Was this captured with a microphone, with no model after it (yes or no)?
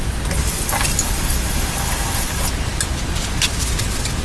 yes